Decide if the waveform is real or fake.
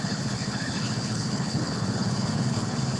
fake